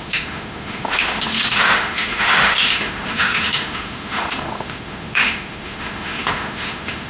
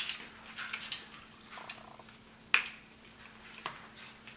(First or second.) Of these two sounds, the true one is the second